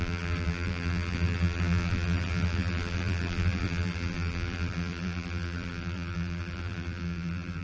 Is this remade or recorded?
remade